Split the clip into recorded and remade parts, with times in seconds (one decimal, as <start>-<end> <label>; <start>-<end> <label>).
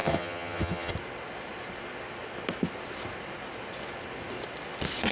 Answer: 0.0-0.9 remade; 0.9-5.1 recorded